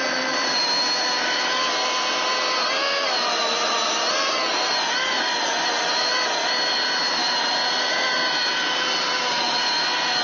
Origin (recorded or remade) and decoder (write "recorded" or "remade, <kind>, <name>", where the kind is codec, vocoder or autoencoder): recorded